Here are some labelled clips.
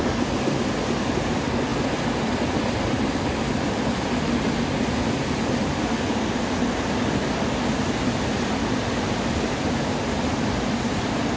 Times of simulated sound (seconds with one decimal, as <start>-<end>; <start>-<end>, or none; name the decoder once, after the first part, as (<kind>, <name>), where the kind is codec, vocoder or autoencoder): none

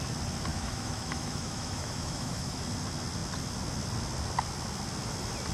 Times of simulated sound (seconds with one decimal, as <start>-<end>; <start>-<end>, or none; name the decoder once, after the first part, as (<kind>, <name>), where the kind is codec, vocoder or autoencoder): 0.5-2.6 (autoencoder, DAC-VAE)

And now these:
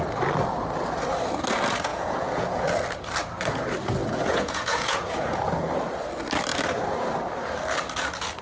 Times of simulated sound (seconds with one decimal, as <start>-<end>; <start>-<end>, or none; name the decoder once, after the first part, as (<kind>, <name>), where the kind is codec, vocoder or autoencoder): 1.9-2.6 (vocoder, Vocos); 4.0-5.5

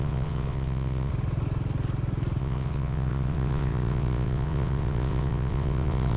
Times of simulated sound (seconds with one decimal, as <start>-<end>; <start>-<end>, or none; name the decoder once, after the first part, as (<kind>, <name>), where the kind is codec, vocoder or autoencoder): 0.0-1.1 (vocoder, WaveNeXt); 2.4-6.2

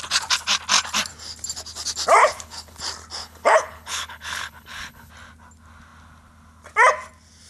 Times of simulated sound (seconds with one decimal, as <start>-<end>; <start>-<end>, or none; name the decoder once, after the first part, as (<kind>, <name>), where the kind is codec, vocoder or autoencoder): 2.2-2.8 (codec, HILCodec); 3.2-5.1

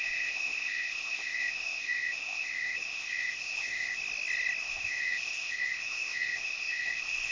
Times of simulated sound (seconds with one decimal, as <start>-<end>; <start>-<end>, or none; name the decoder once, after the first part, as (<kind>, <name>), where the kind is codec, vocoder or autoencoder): 0.0-4.0 (codec, ZipCodec); 4.6-7.3